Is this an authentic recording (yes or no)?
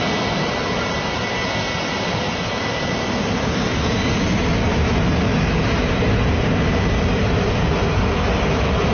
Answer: yes